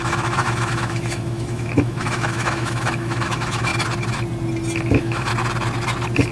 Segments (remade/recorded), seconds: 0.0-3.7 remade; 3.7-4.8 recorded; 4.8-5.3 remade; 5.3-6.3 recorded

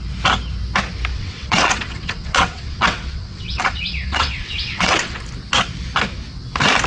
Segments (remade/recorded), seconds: 0.0-1.1 recorded; 1.1-5.2 remade; 5.2-6.9 recorded